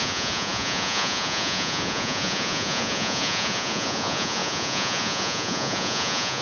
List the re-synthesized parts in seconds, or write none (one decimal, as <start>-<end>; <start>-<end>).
0.0-6.4